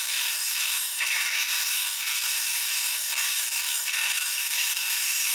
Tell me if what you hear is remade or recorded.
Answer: remade